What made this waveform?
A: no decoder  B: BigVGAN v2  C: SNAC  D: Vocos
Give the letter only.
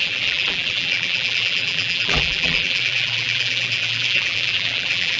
B